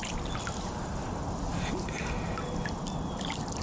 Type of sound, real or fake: real